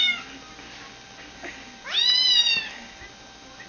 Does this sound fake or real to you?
real